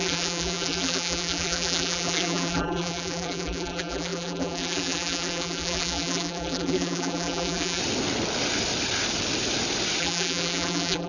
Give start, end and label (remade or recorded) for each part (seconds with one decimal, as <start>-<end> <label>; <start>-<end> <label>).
0.0-7.8 remade; 7.8-10.0 recorded; 10.0-11.1 remade